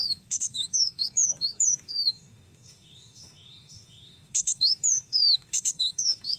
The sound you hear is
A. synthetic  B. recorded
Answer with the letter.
A